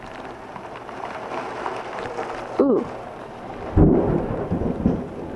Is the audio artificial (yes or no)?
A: no